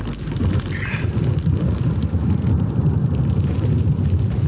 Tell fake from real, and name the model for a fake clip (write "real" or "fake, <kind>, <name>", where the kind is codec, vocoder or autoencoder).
real